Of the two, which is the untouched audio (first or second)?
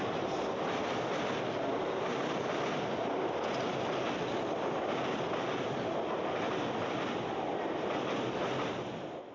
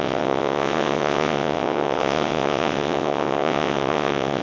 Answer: first